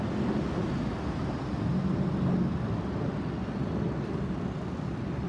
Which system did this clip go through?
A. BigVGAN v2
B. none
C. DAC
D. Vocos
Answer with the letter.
B